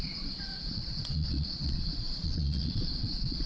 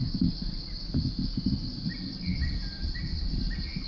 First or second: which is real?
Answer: second